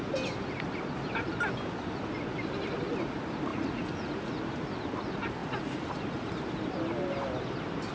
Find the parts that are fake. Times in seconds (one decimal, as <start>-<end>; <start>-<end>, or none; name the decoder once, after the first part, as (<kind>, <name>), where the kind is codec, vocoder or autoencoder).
3.5-4.3 (vocoder, Vocos); 5.4-6.3